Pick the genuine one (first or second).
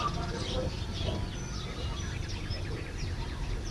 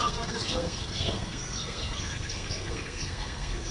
first